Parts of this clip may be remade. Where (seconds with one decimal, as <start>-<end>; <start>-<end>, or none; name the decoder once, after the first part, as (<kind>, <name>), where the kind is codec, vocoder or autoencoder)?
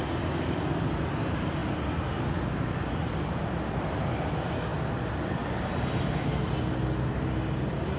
none